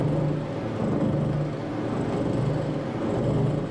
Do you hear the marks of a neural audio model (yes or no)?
no